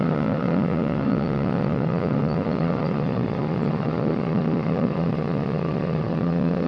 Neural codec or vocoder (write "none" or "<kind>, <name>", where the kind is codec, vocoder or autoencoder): vocoder, Vocos